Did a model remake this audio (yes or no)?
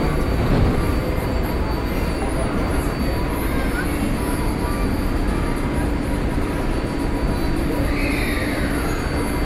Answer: no